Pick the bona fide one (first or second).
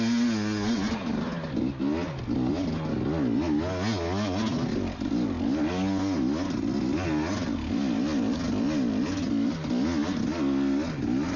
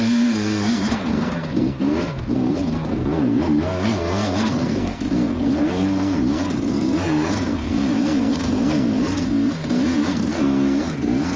first